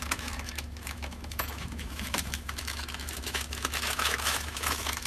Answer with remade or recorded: remade